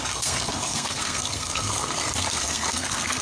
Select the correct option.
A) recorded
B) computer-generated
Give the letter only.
B